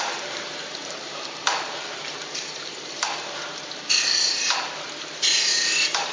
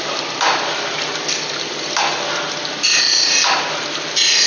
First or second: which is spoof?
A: first